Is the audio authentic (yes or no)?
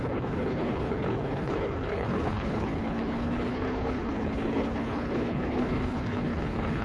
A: no